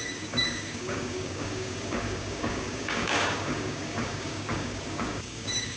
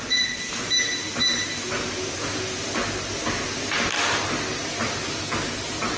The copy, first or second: first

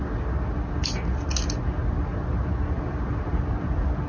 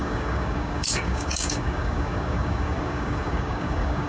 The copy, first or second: second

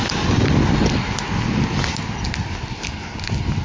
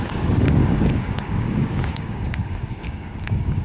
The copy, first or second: second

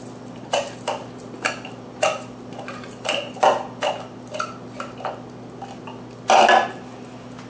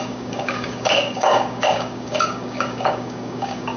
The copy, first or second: second